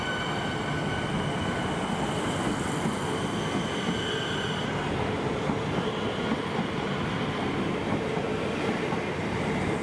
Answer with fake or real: real